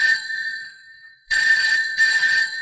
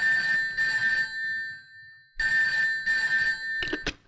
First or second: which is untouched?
second